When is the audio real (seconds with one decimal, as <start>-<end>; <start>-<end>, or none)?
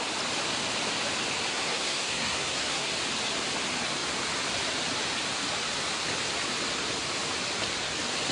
0.0-1.5; 2.9-8.3